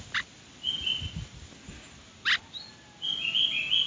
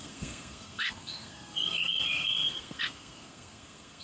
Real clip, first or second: first